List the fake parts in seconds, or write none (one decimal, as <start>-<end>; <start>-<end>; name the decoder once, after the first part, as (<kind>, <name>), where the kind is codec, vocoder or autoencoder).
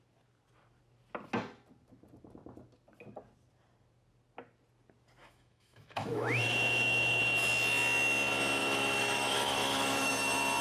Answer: 5.2-7.2 (autoencoder, DAC-VAE); 8.6-10.1